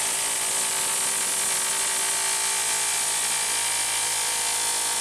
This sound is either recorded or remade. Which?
recorded